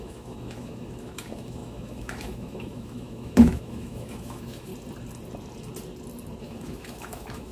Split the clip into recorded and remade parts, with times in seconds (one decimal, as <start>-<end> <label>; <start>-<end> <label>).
0.0-4.7 remade; 4.7-6.4 recorded; 6.4-7.5 remade

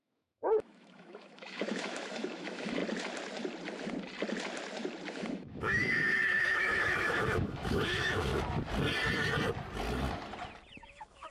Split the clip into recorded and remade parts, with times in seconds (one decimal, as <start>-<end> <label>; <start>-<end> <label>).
0.0-2.8 remade; 2.8-5.1 recorded; 5.1-8.3 remade; 8.3-10.7 recorded; 10.7-11.3 remade

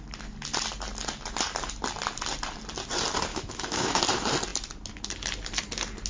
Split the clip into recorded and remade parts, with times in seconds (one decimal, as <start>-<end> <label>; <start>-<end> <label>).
0.0-3.3 recorded; 3.3-4.0 remade; 4.0-6.1 recorded

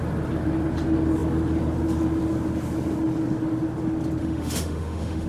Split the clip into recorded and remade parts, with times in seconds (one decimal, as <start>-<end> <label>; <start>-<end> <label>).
0.0-4.2 recorded; 4.2-5.3 remade

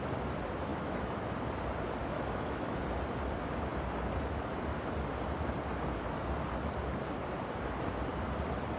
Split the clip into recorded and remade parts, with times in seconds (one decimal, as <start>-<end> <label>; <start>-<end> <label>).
0.0-0.7 recorded; 0.7-1.3 remade; 1.3-2.0 recorded; 2.0-2.8 remade; 2.8-8.8 recorded

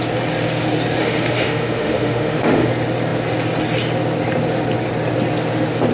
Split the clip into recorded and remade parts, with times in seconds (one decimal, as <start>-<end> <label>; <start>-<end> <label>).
0.0-1.0 recorded; 1.0-2.7 remade; 2.7-5.9 recorded

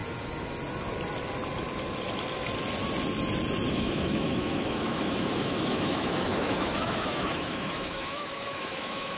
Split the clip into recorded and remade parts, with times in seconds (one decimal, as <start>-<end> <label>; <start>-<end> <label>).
0.0-3.7 recorded; 3.7-9.2 remade

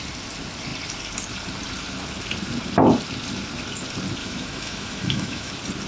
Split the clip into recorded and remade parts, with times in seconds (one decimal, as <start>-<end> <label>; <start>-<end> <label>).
0.0-4.2 recorded; 4.2-5.5 remade; 5.5-5.9 recorded